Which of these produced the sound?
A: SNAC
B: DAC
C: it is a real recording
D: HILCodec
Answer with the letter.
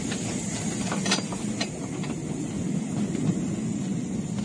C